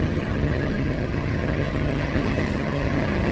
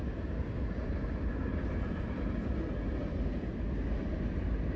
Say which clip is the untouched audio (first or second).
second